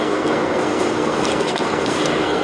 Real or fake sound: fake